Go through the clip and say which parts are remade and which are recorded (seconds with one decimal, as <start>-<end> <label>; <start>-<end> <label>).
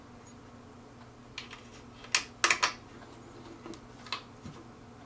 0.0-5.1 recorded